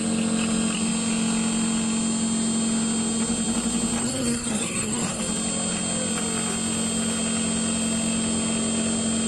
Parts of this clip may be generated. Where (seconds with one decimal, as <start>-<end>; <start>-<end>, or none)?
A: 4.0-5.2